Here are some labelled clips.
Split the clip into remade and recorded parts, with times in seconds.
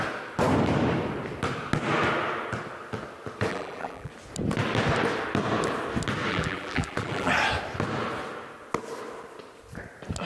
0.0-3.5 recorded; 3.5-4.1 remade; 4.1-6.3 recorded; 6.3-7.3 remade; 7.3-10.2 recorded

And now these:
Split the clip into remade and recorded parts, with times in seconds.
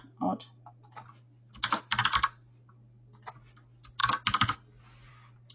0.0-5.5 recorded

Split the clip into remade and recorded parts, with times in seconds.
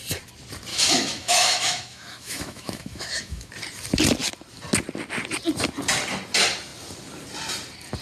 0.0-0.7 recorded; 0.7-3.5 remade; 3.5-8.0 recorded